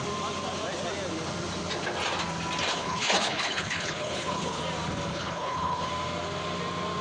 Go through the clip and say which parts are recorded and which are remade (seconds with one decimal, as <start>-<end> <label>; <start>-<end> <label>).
0.0-2.7 recorded; 2.7-4.6 remade; 4.6-5.1 recorded; 5.1-5.9 remade; 5.9-7.0 recorded